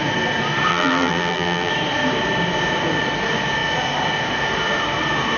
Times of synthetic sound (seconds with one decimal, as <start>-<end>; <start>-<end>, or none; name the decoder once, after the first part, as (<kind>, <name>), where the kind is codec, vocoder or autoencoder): 0.7-1.7 (vocoder, BigVGAN v2)